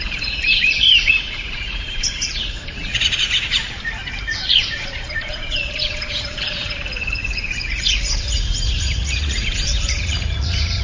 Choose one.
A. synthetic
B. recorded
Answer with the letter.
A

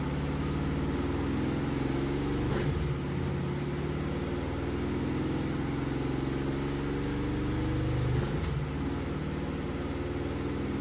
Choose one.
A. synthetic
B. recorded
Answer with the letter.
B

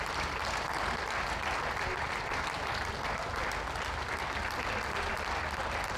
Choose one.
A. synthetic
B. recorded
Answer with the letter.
B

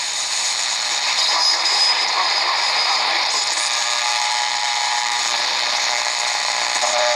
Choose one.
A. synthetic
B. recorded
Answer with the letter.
A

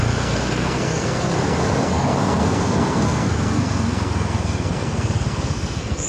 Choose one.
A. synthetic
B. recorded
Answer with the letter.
A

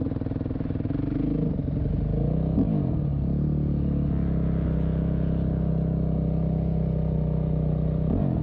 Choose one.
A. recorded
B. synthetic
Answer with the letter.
A